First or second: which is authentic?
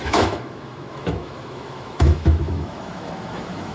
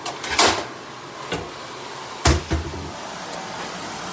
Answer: second